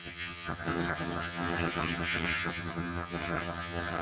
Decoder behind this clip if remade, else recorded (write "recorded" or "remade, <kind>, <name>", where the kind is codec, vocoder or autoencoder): remade, vocoder, HiFi-GAN